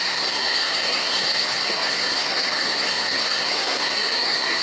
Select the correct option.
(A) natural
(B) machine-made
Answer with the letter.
B